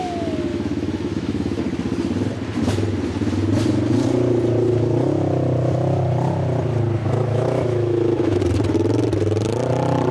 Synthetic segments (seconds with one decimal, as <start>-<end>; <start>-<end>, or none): 0.5-1.6; 7.0-8.4